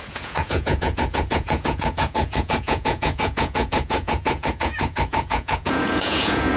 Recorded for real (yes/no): no